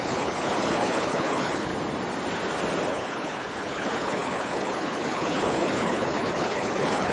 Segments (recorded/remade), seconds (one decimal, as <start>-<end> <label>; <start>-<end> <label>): 0.0-1.7 remade; 1.7-2.9 recorded; 2.9-7.1 remade

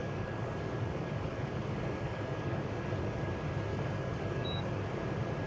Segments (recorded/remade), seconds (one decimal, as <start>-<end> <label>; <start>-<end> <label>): 0.0-3.3 remade; 3.3-3.7 recorded; 3.7-4.8 remade; 4.8-5.5 recorded

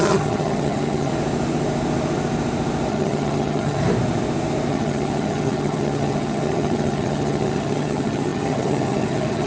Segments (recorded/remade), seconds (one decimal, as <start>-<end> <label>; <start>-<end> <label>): 0.0-1.1 remade; 1.1-2.9 recorded; 2.9-3.8 remade; 3.8-4.7 recorded; 4.7-9.5 remade